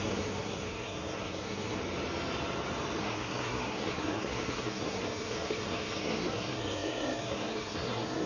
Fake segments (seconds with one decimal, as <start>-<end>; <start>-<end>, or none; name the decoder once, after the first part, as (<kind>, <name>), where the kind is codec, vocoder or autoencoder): 0.0-1.8 (codec, SNAC); 3.0-8.3